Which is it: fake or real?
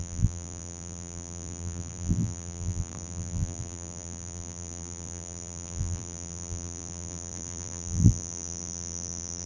fake